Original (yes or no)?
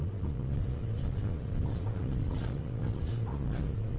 no